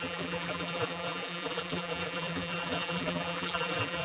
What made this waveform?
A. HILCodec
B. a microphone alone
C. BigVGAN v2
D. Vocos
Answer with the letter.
C